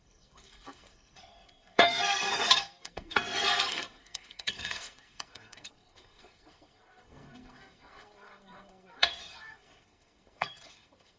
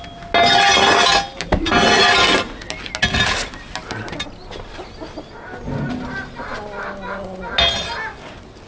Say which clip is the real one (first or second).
second